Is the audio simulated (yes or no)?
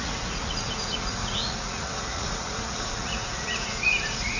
yes